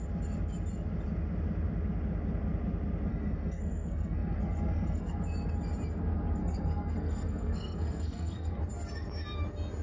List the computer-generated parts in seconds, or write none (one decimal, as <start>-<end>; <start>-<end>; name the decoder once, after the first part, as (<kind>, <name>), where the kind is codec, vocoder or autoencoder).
3.1-5.2 (codec, SNAC); 6.4-8.6